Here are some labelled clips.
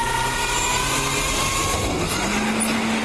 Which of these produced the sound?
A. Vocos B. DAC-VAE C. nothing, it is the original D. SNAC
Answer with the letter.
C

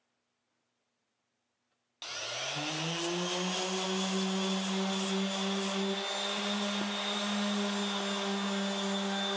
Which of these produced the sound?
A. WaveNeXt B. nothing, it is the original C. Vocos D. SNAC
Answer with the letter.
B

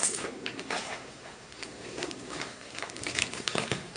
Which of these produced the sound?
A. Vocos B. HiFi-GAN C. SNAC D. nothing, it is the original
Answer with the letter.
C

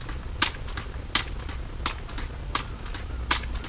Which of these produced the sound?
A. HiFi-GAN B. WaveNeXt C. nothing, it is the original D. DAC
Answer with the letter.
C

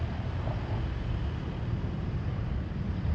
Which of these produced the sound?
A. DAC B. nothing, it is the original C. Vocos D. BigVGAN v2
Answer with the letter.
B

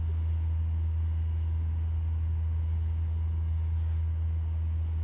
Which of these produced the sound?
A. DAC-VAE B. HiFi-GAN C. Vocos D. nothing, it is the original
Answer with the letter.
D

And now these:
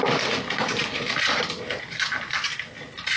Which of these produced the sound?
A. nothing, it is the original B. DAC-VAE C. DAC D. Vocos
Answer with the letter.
A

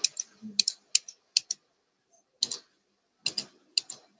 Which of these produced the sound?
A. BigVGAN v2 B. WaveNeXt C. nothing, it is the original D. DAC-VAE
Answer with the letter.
C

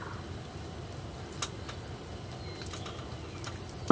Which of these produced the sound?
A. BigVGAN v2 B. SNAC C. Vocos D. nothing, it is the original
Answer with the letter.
D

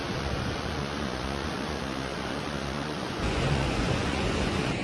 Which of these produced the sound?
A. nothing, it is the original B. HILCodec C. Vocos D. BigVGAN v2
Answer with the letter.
C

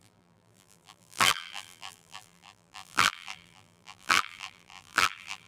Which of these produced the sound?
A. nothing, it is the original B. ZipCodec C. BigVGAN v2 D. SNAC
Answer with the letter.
C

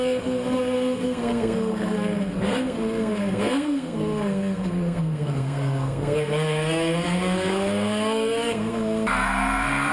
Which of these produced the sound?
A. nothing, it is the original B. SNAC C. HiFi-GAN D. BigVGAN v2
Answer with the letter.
B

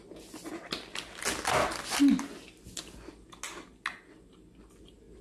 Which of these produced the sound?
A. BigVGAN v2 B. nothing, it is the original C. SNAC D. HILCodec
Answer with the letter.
B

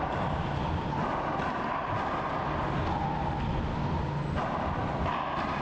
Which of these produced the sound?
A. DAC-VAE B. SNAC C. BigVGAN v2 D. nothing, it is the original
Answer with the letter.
D